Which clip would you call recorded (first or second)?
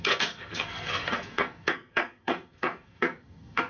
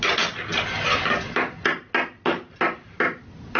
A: second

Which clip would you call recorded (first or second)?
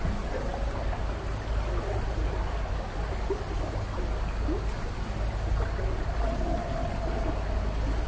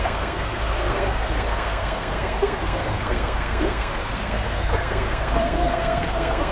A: first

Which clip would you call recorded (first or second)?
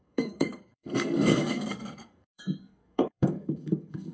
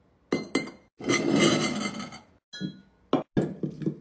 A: second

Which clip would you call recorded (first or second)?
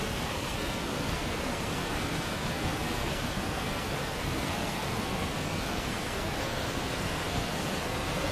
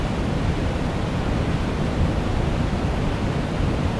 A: second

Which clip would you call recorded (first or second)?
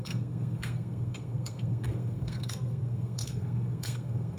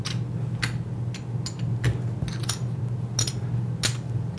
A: second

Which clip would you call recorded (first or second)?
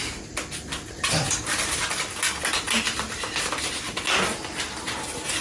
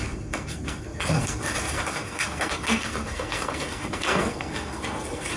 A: first